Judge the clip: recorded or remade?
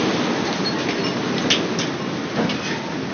recorded